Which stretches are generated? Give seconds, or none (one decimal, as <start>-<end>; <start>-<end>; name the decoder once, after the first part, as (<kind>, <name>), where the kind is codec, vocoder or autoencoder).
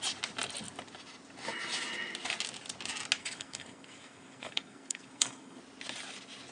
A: 3.2-5.6 (codec, SNAC)